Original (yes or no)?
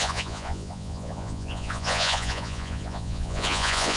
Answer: no